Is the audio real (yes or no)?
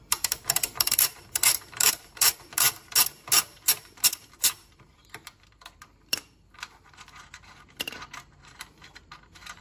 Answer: no